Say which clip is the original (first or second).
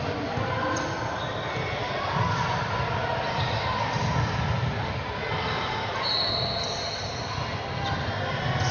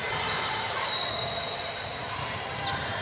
first